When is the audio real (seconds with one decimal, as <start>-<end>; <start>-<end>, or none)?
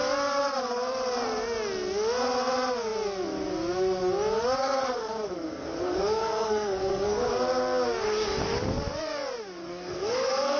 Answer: 0.0-4.6; 7.3-9.6